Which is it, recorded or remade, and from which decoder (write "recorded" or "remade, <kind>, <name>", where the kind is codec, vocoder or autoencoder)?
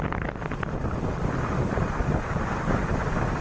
recorded